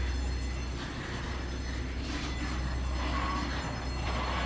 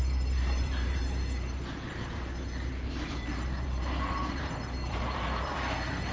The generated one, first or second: second